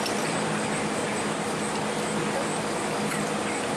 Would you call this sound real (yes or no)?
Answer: yes